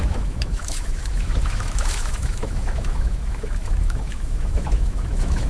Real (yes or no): no